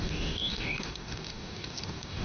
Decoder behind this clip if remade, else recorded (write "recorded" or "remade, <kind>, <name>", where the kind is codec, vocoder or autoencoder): remade, codec, DAC